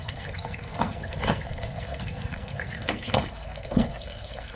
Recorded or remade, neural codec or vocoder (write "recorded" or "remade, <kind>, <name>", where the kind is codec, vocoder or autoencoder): remade, codec, SNAC